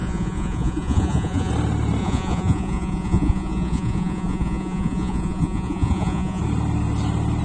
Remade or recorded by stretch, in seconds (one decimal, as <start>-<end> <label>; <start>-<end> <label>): 0.0-1.5 remade; 1.5-2.0 recorded; 2.0-6.4 remade; 6.4-7.4 recorded

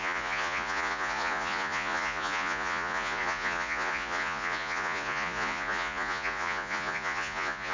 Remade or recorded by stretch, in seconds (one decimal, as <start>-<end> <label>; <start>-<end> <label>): 0.0-7.7 remade

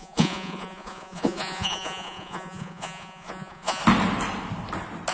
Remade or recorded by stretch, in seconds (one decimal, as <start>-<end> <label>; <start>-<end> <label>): 0.0-3.8 remade; 3.8-5.1 recorded